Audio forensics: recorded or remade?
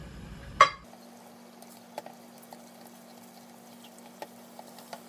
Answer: recorded